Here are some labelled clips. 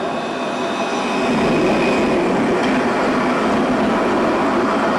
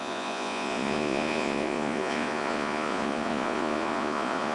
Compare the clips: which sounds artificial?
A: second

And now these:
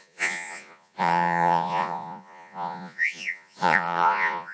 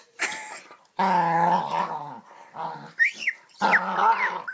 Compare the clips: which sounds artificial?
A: first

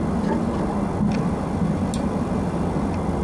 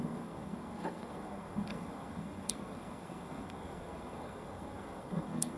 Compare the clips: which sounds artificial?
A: second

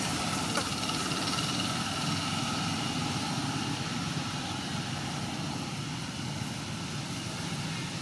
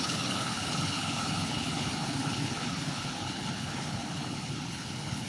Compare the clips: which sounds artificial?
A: second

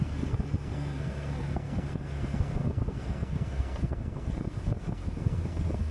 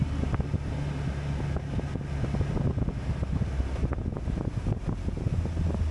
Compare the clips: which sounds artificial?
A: first